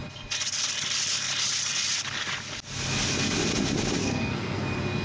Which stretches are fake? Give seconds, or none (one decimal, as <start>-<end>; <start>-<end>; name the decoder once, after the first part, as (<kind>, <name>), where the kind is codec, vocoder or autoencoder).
4.0-4.6 (codec, SNAC)